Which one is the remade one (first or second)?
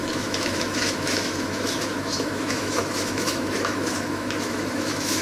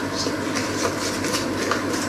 first